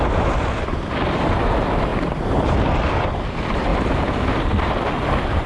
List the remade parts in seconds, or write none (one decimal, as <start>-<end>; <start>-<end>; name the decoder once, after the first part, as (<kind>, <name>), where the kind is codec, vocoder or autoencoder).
1.9-2.5 (vocoder, BigVGAN v2); 3.7-4.9